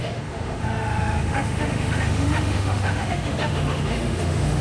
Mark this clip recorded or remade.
remade